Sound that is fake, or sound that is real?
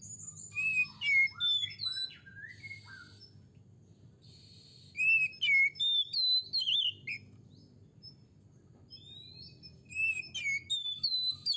real